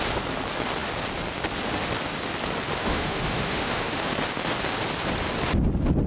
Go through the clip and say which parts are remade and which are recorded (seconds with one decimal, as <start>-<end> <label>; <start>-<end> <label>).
0.0-2.8 recorded; 2.8-4.1 remade; 4.1-6.1 recorded